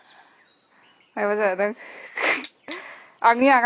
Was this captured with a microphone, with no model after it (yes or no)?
yes